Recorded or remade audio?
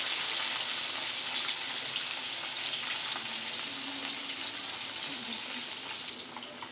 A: recorded